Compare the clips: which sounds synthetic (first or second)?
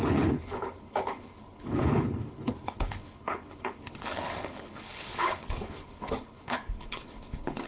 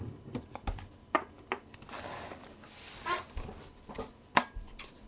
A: first